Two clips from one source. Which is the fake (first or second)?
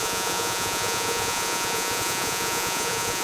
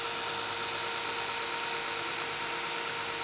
first